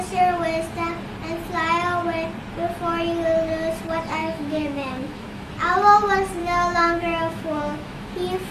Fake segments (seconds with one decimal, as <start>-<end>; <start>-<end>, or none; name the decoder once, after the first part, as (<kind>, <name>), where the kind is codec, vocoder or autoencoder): 4.2-5.5 (autoencoder, DAC-VAE); 6.4-8.1